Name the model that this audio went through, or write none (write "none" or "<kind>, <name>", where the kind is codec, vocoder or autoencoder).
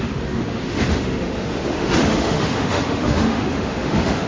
autoencoder, DAC-VAE